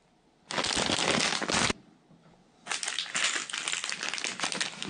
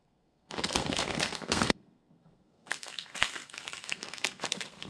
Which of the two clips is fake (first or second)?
second